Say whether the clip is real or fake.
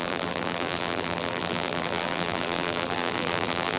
fake